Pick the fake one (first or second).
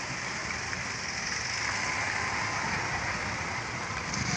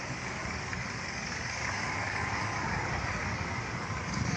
second